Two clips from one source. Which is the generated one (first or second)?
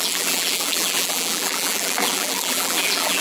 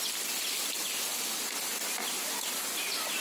first